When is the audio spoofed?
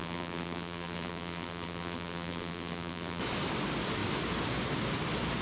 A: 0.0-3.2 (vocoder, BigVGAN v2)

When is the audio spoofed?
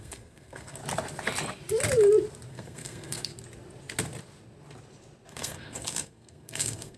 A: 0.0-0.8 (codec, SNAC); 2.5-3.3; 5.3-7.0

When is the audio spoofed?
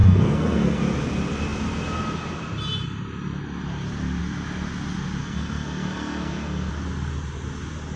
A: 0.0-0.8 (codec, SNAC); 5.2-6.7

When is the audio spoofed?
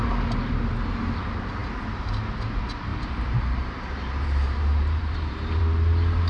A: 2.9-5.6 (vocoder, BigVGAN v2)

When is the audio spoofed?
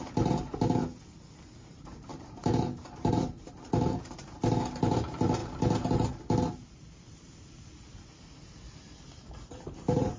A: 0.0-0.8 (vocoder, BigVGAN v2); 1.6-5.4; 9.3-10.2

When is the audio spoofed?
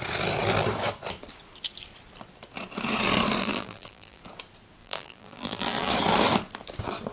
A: 3.4-4.2 (vocoder, BigVGAN v2); 4.8-5.9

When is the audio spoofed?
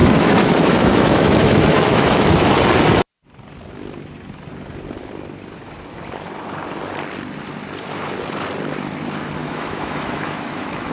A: 0.0-2.5 (autoencoder, DAC-VAE); 9.4-10.9